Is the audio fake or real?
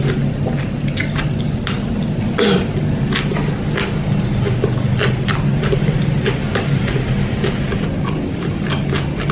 real